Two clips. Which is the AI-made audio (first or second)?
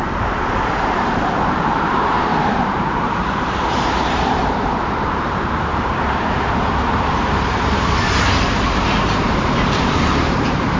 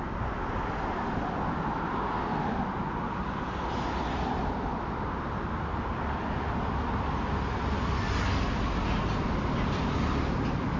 first